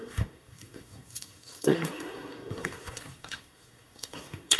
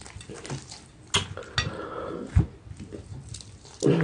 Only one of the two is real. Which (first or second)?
second